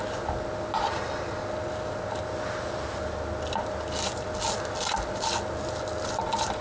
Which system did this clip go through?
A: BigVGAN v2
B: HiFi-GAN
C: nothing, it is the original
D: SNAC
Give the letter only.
C